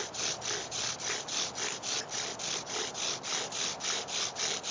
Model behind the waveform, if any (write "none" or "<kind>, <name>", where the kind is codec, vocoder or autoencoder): none